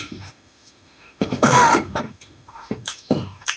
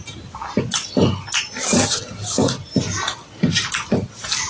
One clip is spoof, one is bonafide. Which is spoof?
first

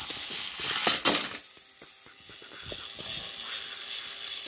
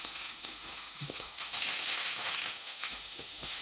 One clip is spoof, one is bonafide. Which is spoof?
second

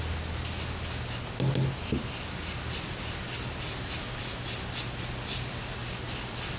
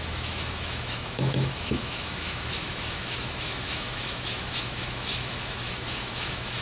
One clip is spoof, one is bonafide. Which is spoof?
second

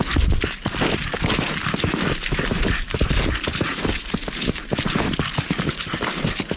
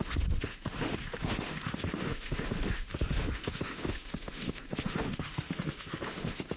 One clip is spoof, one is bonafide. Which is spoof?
second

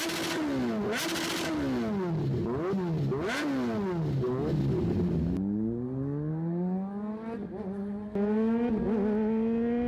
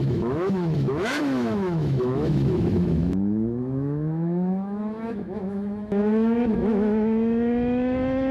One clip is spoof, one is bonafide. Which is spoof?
second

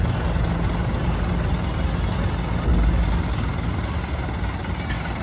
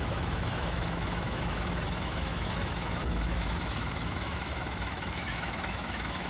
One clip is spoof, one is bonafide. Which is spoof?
second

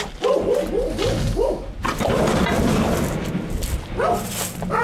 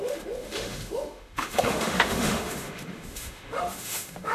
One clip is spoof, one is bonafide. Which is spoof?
second